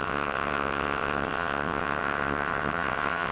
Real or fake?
fake